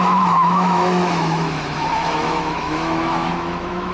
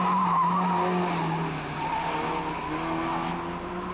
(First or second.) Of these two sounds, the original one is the second